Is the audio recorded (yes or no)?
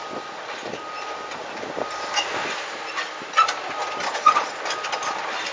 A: yes